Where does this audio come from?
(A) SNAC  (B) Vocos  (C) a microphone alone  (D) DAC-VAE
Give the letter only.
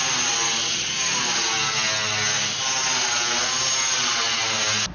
C